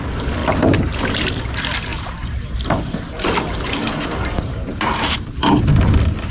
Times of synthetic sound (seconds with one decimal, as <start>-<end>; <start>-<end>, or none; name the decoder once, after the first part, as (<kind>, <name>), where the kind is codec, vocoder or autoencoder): 1.9-5.7 (vocoder, BigVGAN v2)